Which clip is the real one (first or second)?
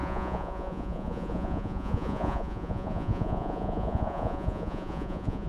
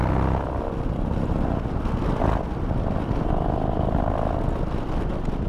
second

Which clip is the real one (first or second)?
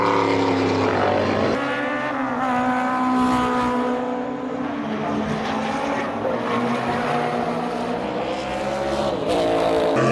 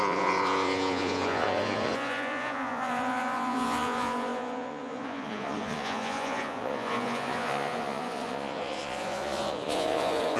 first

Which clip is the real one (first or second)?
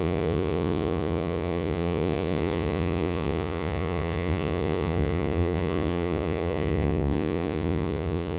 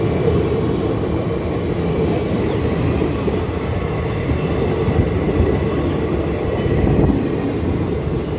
second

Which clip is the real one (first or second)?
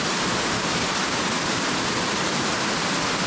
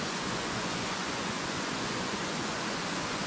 first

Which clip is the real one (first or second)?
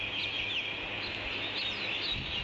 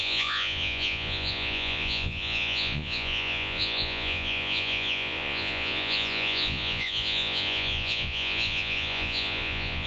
first